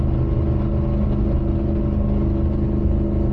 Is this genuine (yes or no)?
yes